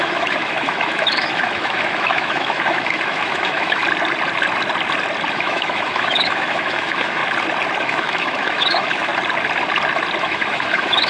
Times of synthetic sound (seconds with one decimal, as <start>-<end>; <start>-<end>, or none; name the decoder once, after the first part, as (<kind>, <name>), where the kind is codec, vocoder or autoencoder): 0.0-3.8 (autoencoder, DAC-VAE); 5.3-7.2; 7.8-9.1; 10.2-11.1